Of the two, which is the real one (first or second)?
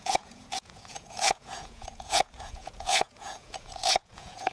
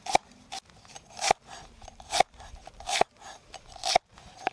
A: second